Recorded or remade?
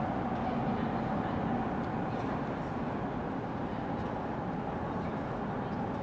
recorded